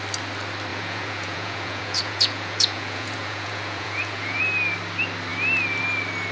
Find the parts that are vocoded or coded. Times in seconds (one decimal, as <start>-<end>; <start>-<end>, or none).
0.7-4.4